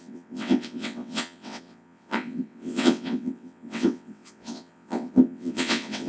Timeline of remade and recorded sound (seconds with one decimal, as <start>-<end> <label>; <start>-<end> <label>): 0.0-6.1 remade

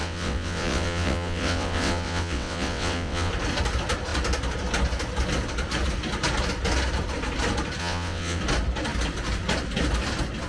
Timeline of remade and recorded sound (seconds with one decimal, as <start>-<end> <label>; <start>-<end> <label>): 0.0-3.3 remade; 3.3-7.8 recorded; 7.8-8.4 remade; 8.4-10.5 recorded